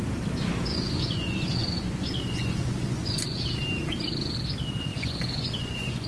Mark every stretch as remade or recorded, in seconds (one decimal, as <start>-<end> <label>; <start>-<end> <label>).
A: 0.0-0.7 recorded; 0.7-3.4 remade; 3.4-4.9 recorded; 4.9-6.1 remade